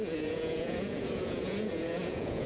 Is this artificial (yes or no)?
yes